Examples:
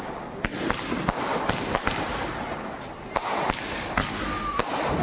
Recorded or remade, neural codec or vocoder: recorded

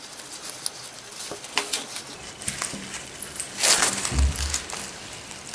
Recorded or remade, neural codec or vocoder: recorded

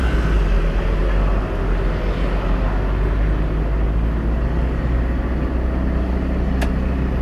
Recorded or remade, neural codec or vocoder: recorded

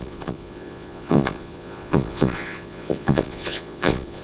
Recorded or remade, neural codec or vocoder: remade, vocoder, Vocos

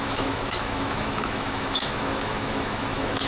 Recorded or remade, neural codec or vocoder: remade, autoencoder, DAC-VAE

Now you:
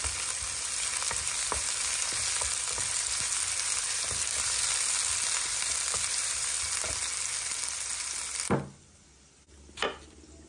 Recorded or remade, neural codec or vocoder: recorded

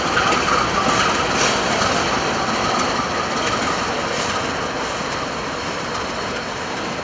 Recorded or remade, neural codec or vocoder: recorded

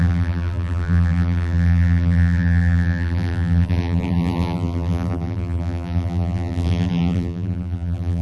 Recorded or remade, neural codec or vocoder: remade, vocoder, BigVGAN v2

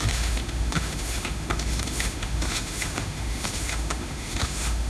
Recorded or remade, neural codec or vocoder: remade, autoencoder, DAC-VAE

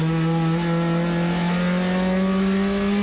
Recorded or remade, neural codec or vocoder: recorded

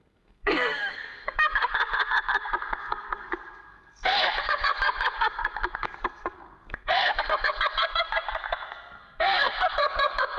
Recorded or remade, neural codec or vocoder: remade, codec, SNAC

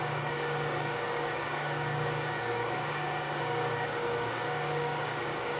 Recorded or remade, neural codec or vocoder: remade, codec, DAC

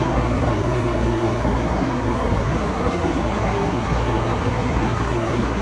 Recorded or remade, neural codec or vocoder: remade, codec, SNAC